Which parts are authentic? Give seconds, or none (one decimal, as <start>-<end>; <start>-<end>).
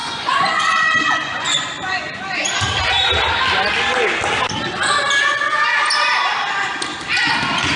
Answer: 2.2-7.8